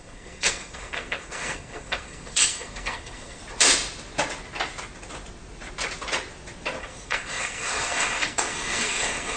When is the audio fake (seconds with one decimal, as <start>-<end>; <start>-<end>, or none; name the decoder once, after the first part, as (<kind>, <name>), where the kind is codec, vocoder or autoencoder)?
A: 0.0-3.4 (codec, SNAC); 6.8-9.4